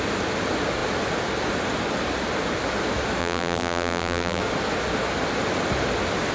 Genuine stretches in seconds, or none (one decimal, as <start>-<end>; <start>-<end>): 0.0-3.2; 4.4-6.3